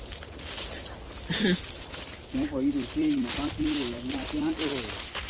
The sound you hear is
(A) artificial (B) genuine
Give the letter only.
A